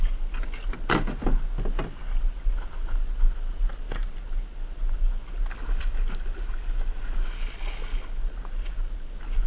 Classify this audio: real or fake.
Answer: real